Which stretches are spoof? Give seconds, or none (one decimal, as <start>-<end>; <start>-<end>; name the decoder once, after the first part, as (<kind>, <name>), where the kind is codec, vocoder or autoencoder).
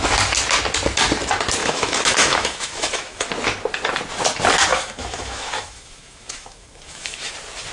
1.6-3.3 (autoencoder, DAC-VAE); 4.7-7.3